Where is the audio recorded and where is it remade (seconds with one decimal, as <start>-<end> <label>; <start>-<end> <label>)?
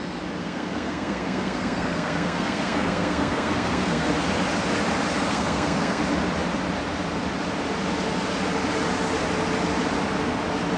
0.0-0.4 recorded; 0.4-4.1 remade; 4.1-5.3 recorded; 5.3-6.0 remade; 6.0-10.8 recorded